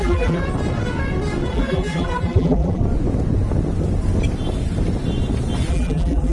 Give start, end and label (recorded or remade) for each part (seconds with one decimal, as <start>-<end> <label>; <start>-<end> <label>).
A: 0.0-0.4 remade; 0.4-1.5 recorded; 1.5-2.8 remade; 2.8-5.7 recorded; 5.7-6.3 remade